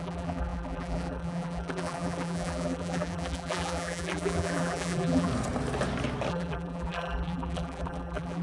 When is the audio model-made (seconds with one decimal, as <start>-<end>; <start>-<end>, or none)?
0.0-5.3; 6.3-8.4